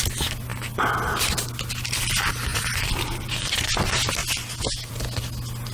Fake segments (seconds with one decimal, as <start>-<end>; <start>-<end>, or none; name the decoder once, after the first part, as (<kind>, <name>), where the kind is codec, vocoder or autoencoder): 0.5-1.5 (vocoder, BigVGAN v2); 2.5-3.5